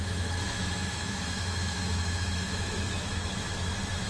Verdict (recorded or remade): remade